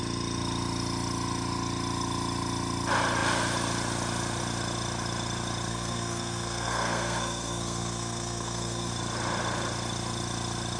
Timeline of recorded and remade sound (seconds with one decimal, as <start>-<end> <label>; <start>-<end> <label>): 0.0-5.7 recorded; 5.7-8.9 remade; 8.9-10.8 recorded